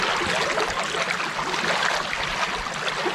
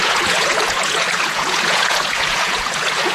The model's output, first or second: second